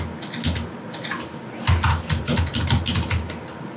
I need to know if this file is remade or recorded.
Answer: recorded